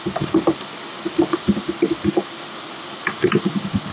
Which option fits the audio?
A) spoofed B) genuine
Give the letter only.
B